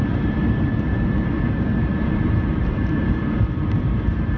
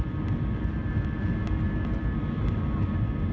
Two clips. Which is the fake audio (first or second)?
first